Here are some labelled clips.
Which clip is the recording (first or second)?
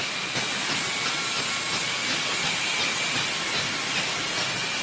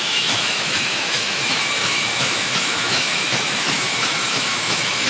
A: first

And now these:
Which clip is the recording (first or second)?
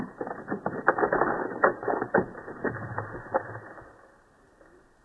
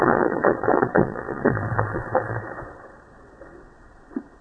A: first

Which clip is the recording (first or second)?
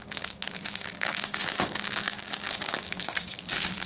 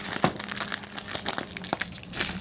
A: second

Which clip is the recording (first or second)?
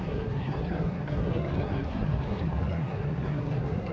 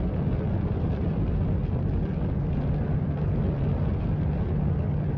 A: second